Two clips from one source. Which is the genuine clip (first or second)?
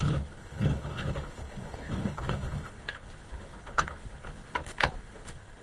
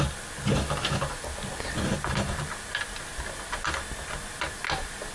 second